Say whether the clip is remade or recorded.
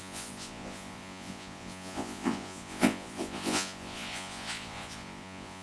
remade